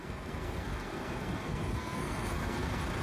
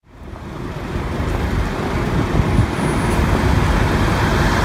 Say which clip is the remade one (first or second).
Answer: first